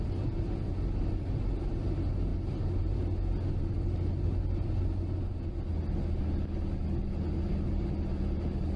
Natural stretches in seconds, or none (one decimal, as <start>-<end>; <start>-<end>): 0.0-8.8

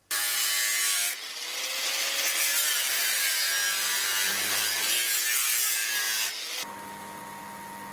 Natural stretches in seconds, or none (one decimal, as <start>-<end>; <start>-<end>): 0.0-7.9

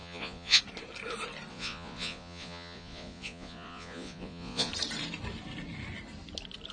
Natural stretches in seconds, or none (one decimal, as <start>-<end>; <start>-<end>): 0.6-1.5; 4.7-6.7